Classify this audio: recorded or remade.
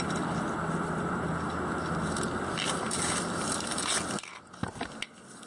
recorded